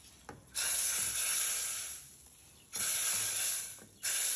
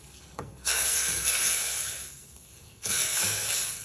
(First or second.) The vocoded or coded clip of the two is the second